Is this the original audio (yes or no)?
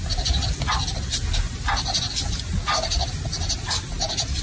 yes